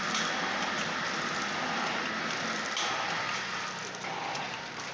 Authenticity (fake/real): fake